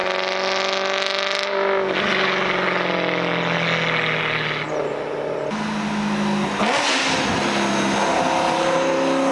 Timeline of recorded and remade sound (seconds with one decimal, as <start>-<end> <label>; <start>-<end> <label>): 0.0-9.3 recorded